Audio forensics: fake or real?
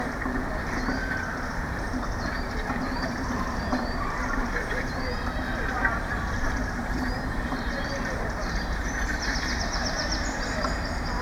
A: fake